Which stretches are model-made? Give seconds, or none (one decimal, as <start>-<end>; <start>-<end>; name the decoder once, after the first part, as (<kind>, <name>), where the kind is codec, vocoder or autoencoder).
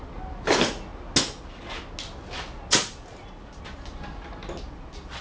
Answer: none